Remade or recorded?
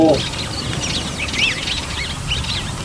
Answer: recorded